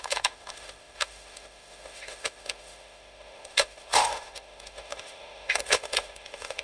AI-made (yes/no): yes